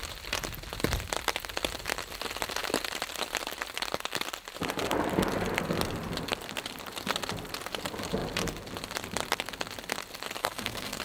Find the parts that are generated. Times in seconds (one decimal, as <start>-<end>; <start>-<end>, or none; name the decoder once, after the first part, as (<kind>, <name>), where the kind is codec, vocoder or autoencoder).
10.4-11.0 (codec, SNAC)